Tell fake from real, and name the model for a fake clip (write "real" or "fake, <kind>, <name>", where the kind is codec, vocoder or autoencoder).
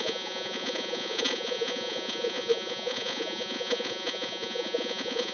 fake, vocoder, Vocos